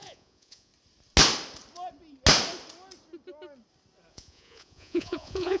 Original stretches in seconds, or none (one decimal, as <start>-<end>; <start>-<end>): 0.7-4.1